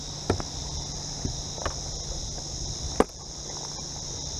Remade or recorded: recorded